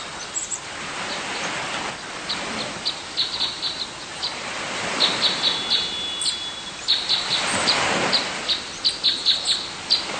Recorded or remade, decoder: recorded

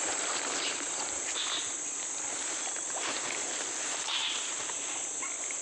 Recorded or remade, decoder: recorded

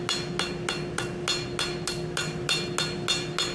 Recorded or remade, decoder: recorded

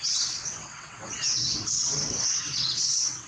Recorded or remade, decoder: remade, vocoder, WaveNeXt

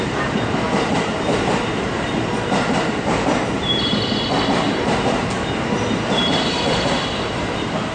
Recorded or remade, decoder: remade, vocoder, BigVGAN v2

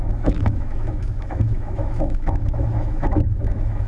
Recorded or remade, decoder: remade, autoencoder, DAC-VAE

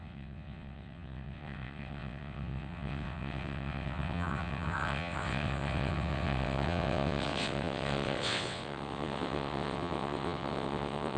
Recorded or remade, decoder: remade, vocoder, WaveNeXt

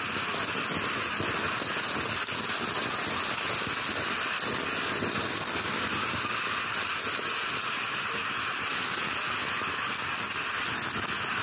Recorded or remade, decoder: recorded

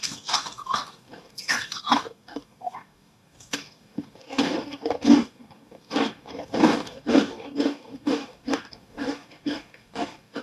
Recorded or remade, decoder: remade, codec, DAC